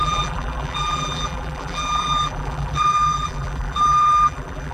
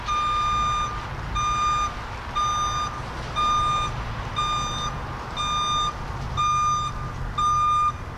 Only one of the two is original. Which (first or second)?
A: second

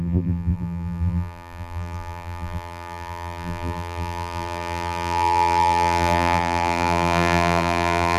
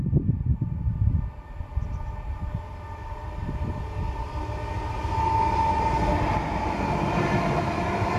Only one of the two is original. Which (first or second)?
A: second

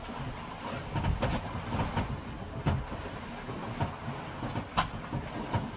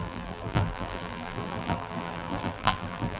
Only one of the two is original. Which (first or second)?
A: first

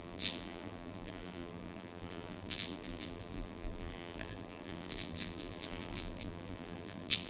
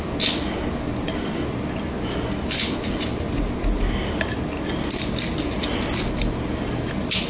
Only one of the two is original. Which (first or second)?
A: second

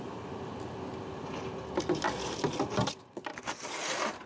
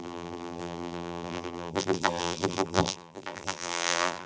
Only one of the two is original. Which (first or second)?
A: first